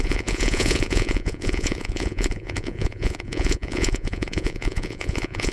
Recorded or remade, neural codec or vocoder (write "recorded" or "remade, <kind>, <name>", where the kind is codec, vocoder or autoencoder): remade, vocoder, Vocos